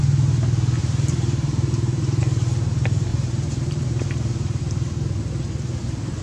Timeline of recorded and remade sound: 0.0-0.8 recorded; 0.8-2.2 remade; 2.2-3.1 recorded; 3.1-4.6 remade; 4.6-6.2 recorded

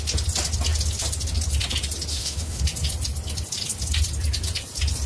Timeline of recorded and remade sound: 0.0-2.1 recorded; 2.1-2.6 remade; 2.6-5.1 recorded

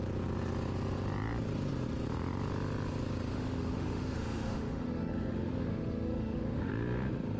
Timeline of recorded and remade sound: 0.0-3.3 recorded; 3.3-6.7 remade; 6.7-7.4 recorded

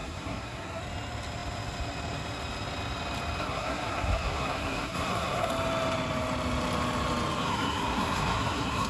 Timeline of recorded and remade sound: 0.0-0.8 remade; 0.8-3.4 recorded; 3.4-5.5 remade; 5.5-7.4 recorded; 7.4-8.9 remade